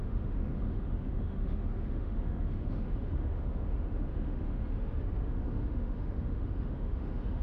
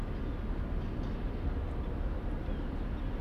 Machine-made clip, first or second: first